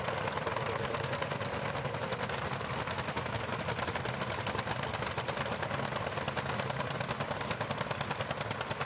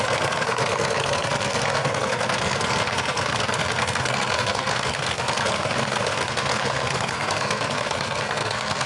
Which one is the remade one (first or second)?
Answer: second